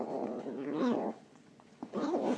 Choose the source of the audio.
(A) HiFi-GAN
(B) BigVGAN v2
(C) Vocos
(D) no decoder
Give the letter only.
C